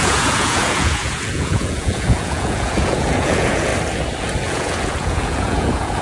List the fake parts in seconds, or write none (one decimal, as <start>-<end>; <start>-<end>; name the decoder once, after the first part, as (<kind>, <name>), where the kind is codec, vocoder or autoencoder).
0.0-3.7 (vocoder, Vocos); 4.2-6.0